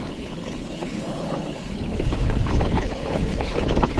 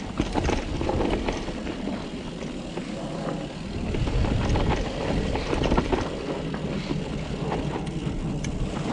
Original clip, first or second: second